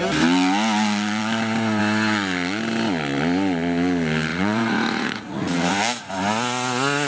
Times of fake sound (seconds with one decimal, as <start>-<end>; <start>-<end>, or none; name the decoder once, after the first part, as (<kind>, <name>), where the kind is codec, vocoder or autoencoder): 4.3-5.7 (vocoder, Vocos)